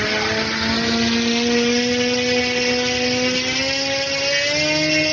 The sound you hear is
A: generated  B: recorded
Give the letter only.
B